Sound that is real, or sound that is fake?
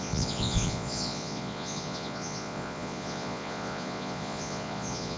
fake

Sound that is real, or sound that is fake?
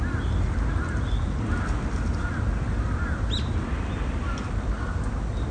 real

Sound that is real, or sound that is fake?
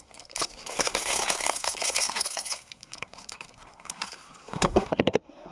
fake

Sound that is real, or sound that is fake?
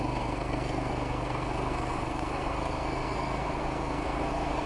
fake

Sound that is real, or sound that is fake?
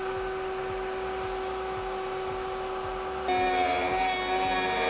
real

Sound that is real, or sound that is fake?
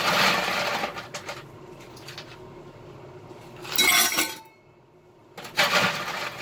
real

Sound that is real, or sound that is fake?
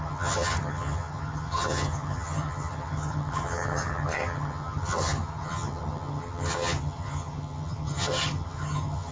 fake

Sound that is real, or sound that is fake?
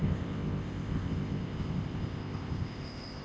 fake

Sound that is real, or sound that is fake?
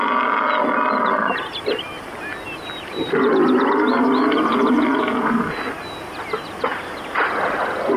real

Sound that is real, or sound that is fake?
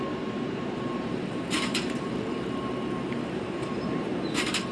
fake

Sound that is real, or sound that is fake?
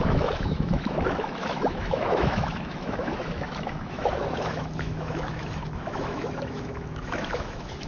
fake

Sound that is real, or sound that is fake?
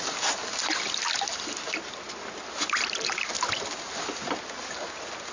real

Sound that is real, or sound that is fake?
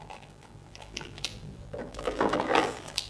fake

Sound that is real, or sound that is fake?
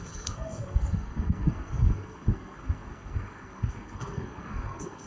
fake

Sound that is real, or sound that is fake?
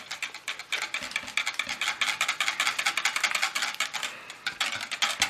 real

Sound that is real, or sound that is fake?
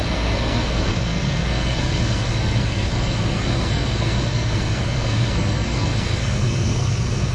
fake